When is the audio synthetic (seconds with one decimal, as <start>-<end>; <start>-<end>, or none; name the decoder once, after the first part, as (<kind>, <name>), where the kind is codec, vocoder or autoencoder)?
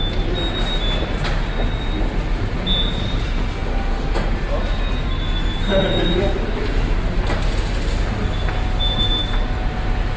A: none